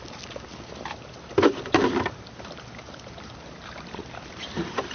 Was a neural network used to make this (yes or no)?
yes